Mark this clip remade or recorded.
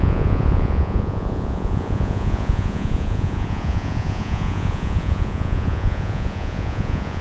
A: remade